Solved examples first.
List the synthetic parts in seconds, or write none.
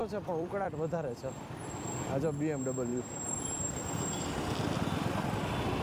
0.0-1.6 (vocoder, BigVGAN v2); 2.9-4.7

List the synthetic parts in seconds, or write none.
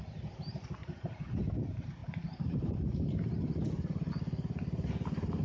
0.8-1.4 (vocoder, BigVGAN v2); 2.0-4.1